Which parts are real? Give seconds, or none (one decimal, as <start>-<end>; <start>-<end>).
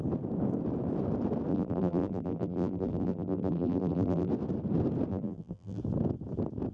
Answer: 0.0-1.5; 4.3-5.1; 5.8-6.7